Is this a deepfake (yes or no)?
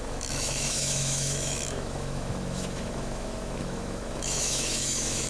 yes